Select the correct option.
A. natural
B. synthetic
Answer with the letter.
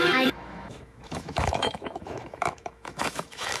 B